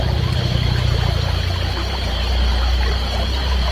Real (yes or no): yes